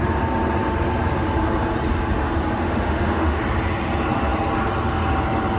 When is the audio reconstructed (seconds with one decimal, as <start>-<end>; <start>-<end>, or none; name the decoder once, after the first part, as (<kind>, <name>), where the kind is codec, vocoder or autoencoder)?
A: 2.6-3.4 (autoencoder, DAC-VAE)